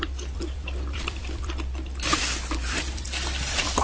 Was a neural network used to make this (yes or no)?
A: yes